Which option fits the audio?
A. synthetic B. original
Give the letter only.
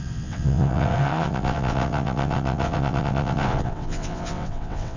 A